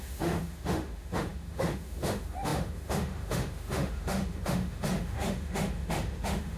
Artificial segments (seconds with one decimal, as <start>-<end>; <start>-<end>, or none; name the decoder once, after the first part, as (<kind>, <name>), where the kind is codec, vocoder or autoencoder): 0.0-6.6 (autoencoder, DAC-VAE)